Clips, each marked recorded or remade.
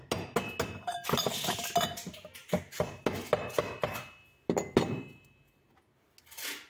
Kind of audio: recorded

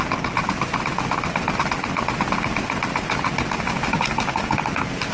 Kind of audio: recorded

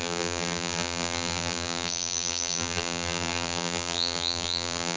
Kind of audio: remade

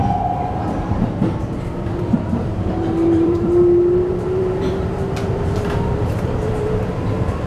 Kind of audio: remade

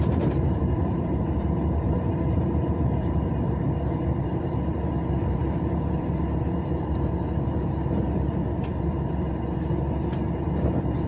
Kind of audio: remade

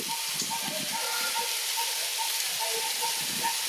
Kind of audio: recorded